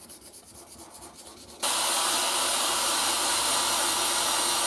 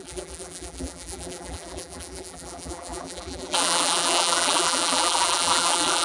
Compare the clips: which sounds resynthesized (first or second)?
second